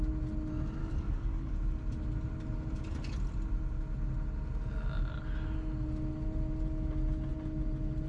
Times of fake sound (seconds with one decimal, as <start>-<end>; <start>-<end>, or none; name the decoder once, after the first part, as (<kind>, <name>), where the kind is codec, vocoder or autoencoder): 0.8-1.5 (codec, DAC)